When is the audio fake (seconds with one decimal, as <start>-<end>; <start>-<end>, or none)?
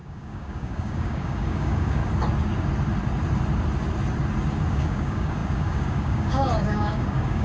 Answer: 0.0-2.0; 4.7-7.4